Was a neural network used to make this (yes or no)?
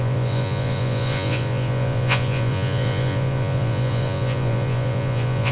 yes